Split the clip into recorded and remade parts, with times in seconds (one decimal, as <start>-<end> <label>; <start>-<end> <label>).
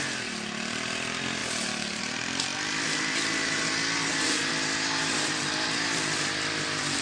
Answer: 0.0-1.4 recorded; 1.4-2.0 remade; 2.0-2.5 recorded; 2.5-6.5 remade; 6.5-7.0 recorded